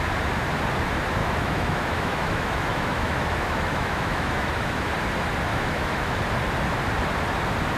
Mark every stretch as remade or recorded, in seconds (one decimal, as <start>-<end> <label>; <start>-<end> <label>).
0.0-1.2 recorded; 1.2-4.9 remade; 4.9-5.5 recorded; 5.5-6.2 remade; 6.2-7.8 recorded